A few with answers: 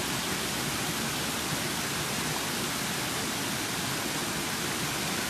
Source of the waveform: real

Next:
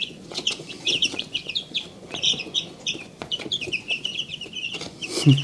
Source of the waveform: fake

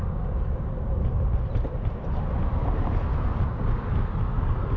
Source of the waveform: real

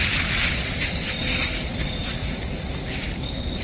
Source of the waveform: real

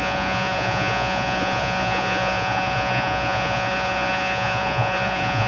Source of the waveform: fake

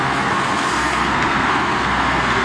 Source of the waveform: fake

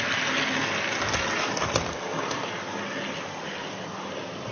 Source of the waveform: real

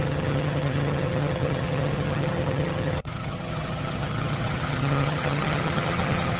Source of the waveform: fake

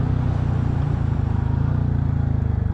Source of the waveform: real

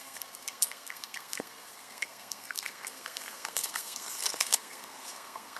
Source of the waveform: fake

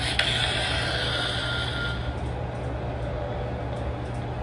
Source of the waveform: real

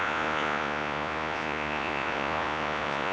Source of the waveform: fake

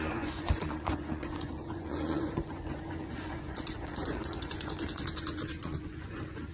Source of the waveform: fake